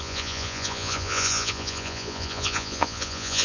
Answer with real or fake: fake